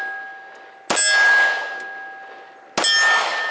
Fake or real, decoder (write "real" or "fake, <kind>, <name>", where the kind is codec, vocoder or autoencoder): real